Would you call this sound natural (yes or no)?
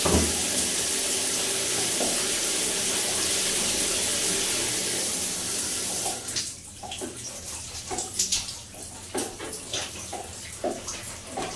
yes